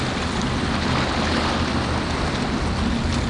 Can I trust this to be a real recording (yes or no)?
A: yes